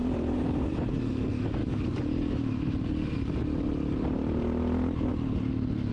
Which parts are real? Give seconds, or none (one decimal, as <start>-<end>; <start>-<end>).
0.7-5.9